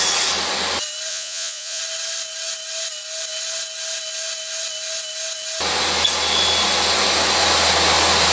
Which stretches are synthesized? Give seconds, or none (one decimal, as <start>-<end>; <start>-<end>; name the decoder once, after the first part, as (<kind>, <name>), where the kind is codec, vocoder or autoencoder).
1.1-1.8 (vocoder, Vocos)